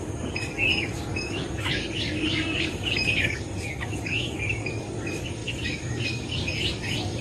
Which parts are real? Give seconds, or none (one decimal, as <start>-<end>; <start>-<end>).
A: none